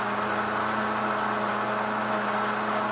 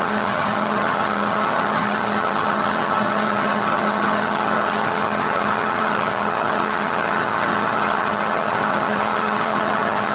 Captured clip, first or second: first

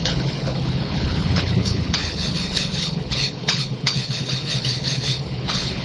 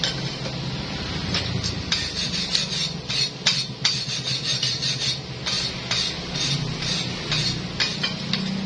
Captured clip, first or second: second